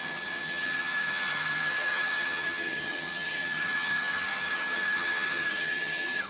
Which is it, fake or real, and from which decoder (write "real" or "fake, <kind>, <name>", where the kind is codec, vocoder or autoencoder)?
fake, vocoder, HiFi-GAN